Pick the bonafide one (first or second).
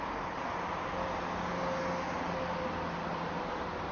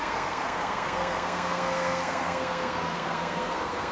first